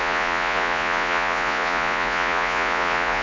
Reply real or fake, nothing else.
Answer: fake